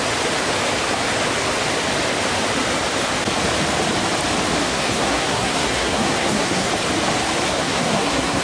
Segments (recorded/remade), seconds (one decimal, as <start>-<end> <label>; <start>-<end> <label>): 0.0-4.6 recorded; 4.6-6.7 remade; 6.7-7.5 recorded; 7.5-8.4 remade